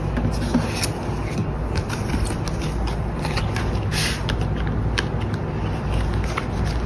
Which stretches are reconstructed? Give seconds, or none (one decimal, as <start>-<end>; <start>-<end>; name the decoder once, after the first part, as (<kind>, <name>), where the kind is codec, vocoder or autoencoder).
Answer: none